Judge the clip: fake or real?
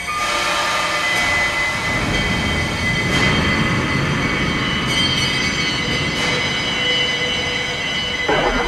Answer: real